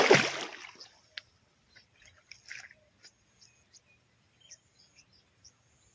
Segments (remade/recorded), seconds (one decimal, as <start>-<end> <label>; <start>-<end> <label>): 0.0-5.9 recorded